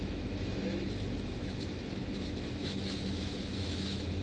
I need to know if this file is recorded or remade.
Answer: remade